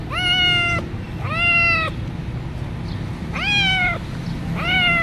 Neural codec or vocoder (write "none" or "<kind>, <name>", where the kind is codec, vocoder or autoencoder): none